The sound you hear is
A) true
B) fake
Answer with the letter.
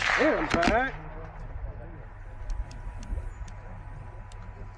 A